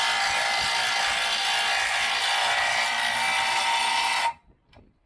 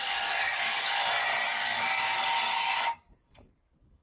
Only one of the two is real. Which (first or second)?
first